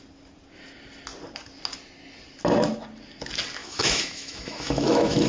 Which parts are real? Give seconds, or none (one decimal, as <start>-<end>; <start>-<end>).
0.0-3.6